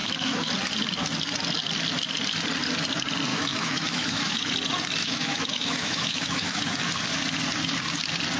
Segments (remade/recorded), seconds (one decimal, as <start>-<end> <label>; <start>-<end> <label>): 0.0-0.5 remade; 0.5-3.3 recorded; 3.3-4.5 remade; 4.5-5.0 recorded; 5.0-6.6 remade; 6.6-8.4 recorded